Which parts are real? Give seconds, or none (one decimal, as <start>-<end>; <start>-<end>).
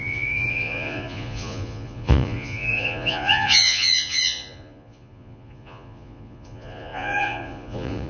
none